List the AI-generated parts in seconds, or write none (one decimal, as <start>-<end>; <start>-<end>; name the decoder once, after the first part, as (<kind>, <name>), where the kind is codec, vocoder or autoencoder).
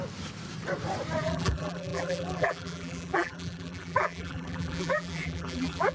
1.2-5.9 (vocoder, BigVGAN v2)